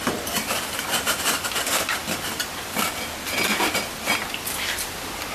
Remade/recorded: remade